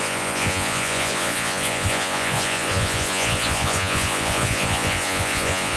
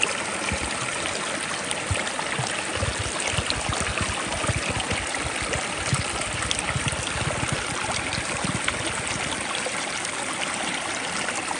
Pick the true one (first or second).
second